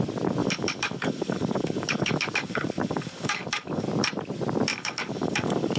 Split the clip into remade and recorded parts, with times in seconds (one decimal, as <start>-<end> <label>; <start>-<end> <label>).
0.0-0.4 recorded; 0.4-3.9 remade; 3.9-4.7 recorded; 4.7-5.8 remade